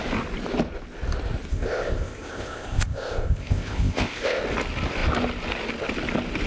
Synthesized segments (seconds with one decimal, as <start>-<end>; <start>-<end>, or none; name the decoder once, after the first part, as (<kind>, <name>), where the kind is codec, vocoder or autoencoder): 1.5-4.4 (codec, ZipCodec)